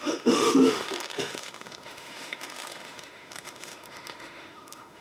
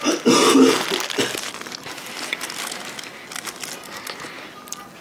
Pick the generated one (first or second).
first